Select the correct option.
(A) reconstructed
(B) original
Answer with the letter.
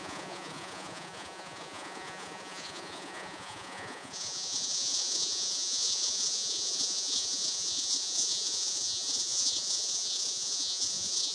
A